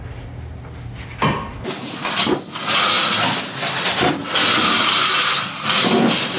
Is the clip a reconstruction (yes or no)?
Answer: no